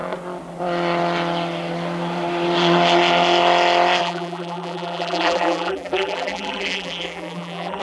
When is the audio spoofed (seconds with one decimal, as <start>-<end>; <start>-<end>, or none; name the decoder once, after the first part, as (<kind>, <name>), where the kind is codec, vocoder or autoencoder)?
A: 4.0-7.8 (vocoder, BigVGAN v2)

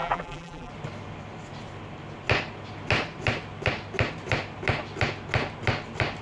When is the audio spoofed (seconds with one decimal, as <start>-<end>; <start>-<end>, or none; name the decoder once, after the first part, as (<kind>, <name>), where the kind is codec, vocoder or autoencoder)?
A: 0.0-0.7 (vocoder, BigVGAN v2)

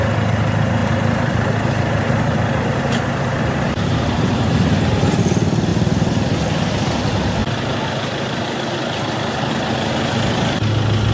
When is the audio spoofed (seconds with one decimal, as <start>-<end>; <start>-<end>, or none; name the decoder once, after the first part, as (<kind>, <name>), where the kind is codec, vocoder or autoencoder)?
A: 0.8-5.2 (vocoder, BigVGAN v2); 7.4-9.5